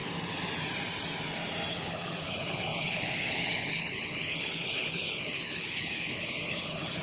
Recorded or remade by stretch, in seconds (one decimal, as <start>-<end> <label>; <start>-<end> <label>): 0.0-1.7 recorded; 1.7-7.0 remade